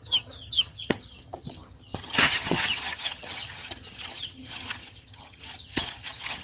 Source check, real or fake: fake